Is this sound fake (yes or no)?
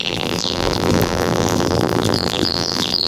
yes